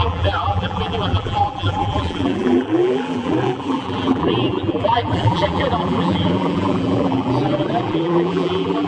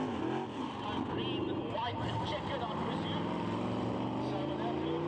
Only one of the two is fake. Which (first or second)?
first